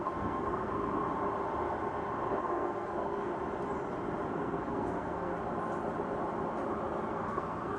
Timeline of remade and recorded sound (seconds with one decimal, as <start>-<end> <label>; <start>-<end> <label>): 0.0-1.0 remade; 1.0-2.4 recorded; 2.4-3.3 remade; 3.3-4.3 recorded; 4.3-5.3 remade; 5.3-7.1 recorded; 7.1-7.8 remade